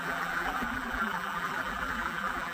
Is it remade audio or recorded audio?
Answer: remade